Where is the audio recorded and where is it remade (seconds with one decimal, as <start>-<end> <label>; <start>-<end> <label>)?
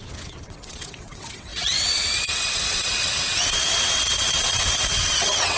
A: 0.0-5.6 remade